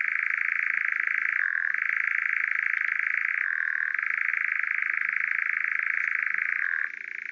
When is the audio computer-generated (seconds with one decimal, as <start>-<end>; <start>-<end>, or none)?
none